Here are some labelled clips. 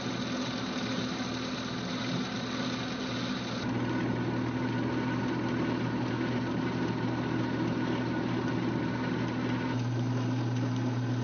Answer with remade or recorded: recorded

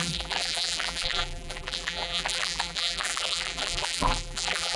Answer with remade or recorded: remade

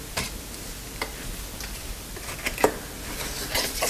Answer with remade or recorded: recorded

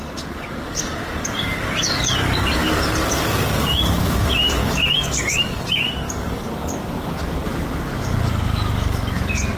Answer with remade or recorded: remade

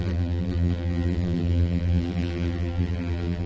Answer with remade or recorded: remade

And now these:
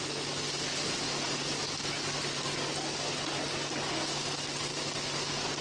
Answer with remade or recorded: recorded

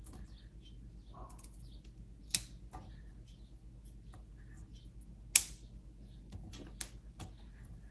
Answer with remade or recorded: recorded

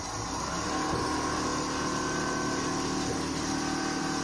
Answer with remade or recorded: recorded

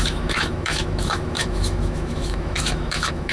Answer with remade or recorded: remade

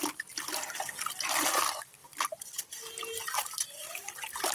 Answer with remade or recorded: recorded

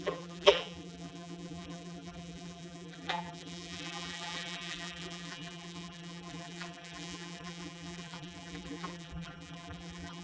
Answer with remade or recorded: remade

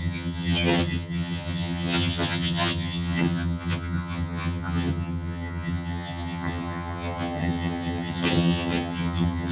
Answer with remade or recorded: remade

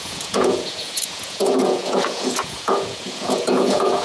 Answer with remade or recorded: remade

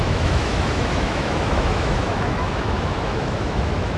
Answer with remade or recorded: remade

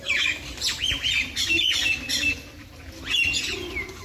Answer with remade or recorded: recorded